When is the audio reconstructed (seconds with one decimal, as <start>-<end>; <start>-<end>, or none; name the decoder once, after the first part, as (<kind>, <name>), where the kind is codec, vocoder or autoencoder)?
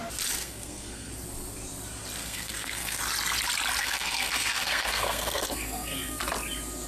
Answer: 0.4-1.1 (codec, SNAC); 2.2-3.0; 3.8-6.2